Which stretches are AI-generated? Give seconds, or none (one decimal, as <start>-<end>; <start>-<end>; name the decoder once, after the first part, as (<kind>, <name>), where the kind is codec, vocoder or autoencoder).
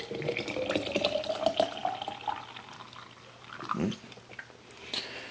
none